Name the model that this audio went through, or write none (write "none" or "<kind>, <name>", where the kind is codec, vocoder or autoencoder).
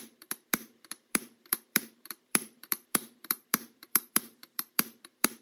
vocoder, BigVGAN v2